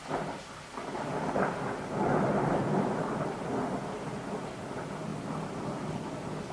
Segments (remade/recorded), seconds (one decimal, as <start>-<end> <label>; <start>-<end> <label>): 0.0-6.5 recorded